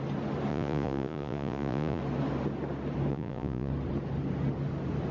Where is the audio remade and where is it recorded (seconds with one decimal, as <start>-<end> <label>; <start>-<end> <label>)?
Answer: 0.0-0.5 recorded; 0.5-2.0 remade; 2.0-3.1 recorded; 3.1-3.7 remade; 3.7-5.1 recorded